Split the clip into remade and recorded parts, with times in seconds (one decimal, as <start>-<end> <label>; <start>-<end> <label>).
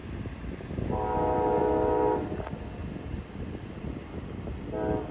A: 0.0-5.1 recorded